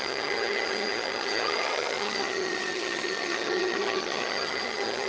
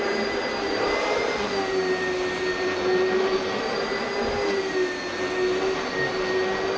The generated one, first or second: first